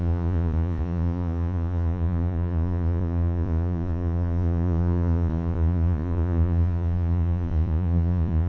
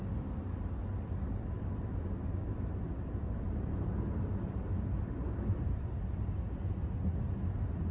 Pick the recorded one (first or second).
second